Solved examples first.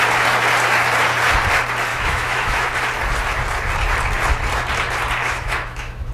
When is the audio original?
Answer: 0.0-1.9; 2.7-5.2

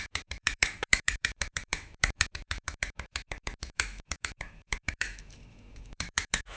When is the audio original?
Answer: none

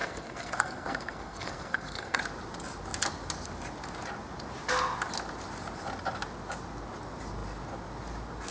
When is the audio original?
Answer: 2.2-8.5

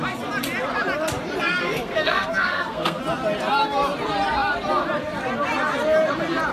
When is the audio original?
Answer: 0.0-1.6; 3.0-6.5

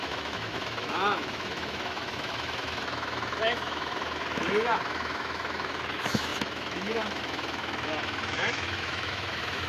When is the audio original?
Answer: none

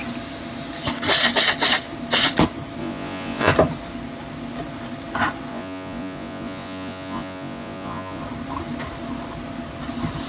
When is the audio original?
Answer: 0.0-2.8; 3.5-5.5; 8.2-10.3

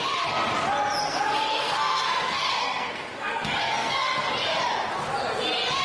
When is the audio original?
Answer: 0.0-1.0; 4.3-5.8